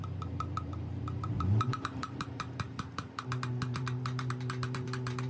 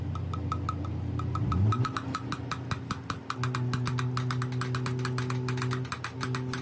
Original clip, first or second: second